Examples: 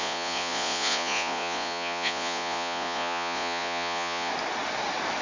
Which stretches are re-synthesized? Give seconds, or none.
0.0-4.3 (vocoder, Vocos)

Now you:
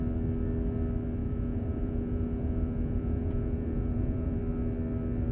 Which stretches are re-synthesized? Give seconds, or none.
1.2-4.4 (vocoder, Vocos)